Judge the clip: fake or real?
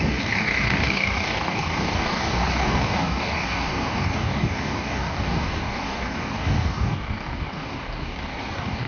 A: fake